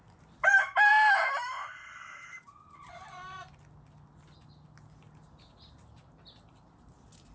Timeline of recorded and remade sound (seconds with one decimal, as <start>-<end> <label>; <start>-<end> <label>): 0.0-7.3 recorded